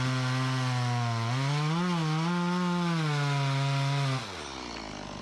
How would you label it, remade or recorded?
recorded